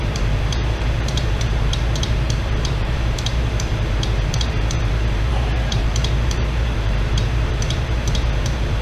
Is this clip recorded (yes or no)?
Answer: no